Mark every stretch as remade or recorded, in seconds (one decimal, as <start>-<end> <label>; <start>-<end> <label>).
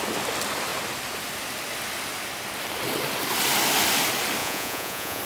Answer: 0.0-4.4 recorded; 4.4-5.2 remade